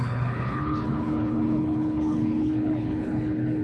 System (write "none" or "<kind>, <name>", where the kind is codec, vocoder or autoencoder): codec, HILCodec